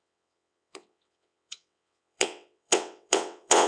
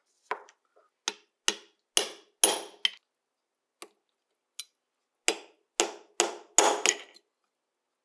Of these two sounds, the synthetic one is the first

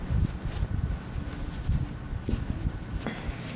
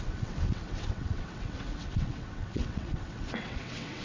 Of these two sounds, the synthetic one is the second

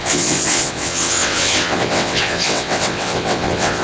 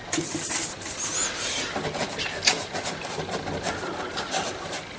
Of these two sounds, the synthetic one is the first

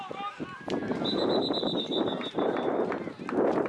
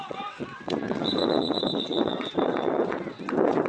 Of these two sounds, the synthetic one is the second